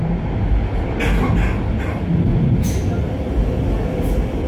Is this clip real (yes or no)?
yes